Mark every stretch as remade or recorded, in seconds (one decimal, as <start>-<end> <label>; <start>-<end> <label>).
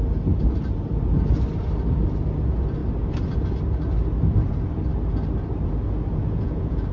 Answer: 0.0-6.2 recorded; 6.2-6.9 remade